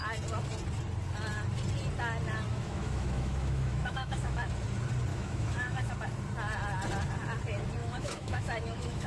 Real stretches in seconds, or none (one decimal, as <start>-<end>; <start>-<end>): 0.0-2.5; 4.5-5.1; 5.9-7.8